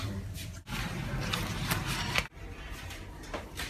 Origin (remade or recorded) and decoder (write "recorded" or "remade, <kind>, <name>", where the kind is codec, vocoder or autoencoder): recorded